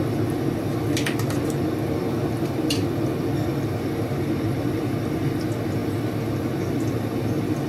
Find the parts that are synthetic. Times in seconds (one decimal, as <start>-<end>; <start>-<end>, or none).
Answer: none